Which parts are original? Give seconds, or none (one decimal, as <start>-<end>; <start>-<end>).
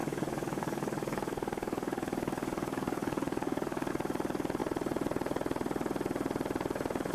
3.9-7.1